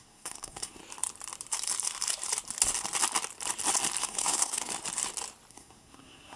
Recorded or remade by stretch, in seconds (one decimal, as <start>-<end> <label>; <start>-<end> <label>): 0.0-0.8 remade; 0.8-4.0 recorded; 4.0-4.7 remade; 4.7-5.5 recorded; 5.5-6.4 remade